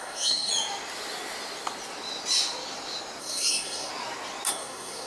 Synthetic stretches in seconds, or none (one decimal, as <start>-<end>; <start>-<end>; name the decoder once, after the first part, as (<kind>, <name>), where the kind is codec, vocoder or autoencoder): 0.0-0.5 (codec, SNAC); 3.2-3.9; 4.5-5.1